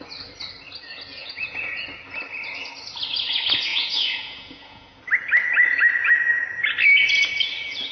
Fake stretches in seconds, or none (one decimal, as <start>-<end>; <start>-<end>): 1.2-1.8; 3.7-5.0